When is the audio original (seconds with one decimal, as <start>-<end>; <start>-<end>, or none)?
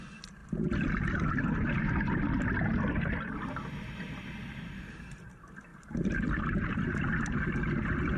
0.0-8.2